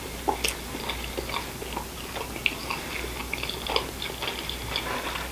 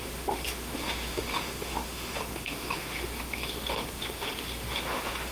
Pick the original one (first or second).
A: first